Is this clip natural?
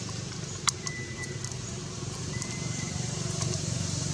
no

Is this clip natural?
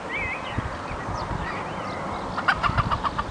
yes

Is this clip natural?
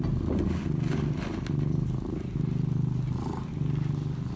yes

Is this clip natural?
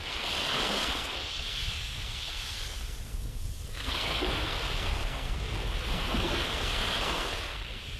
no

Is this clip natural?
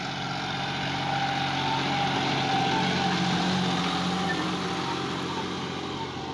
yes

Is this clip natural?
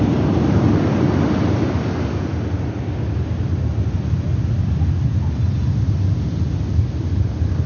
yes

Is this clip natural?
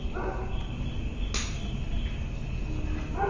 yes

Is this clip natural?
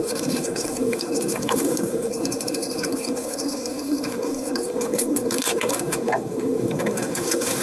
no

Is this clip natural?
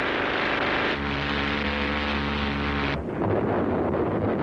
yes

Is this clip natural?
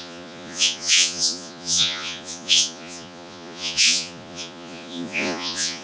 no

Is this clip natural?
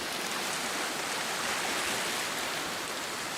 yes